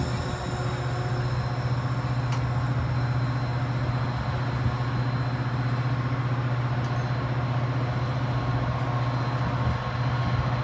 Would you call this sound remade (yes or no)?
no